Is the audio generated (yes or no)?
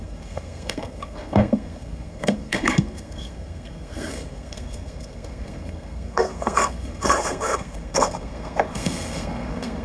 yes